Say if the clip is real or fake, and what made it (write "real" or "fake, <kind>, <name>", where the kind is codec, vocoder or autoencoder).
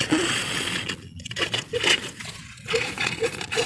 fake, vocoder, Vocos